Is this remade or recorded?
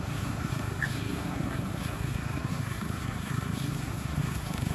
remade